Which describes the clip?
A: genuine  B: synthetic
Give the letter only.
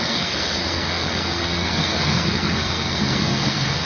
B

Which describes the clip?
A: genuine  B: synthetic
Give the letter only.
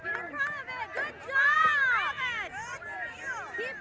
A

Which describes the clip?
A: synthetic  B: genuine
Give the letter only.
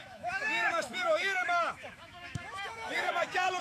A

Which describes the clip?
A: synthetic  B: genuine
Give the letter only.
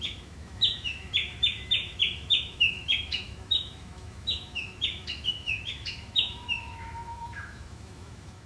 A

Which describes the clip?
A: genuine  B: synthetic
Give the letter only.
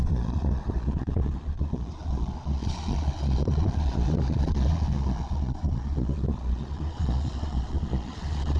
B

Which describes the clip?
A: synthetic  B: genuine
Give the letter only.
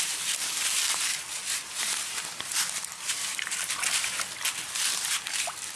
A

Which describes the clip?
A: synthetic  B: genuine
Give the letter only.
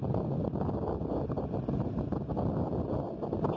B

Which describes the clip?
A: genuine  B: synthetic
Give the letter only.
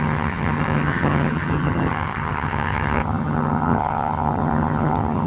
B